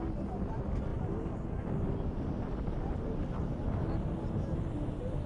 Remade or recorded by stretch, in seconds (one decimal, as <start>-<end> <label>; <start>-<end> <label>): 0.0-5.3 recorded